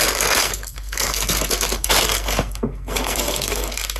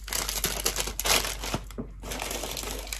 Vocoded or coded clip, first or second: first